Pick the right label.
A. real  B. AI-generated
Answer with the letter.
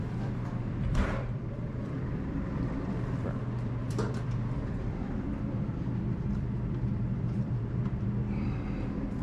B